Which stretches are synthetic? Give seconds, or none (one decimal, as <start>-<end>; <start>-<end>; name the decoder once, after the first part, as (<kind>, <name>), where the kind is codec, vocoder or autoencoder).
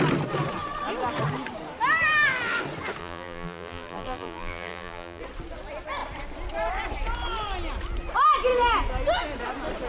3.0-5.2 (vocoder, BigVGAN v2)